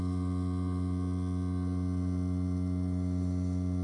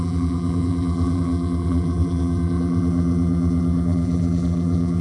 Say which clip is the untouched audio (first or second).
first